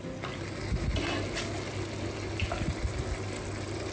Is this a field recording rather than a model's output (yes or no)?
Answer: yes